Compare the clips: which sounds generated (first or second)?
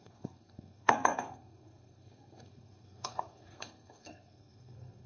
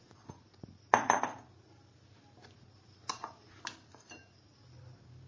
first